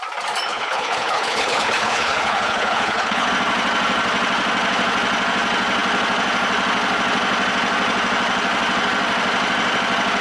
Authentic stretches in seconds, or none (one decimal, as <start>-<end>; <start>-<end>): 0.0-0.5; 3.3-10.2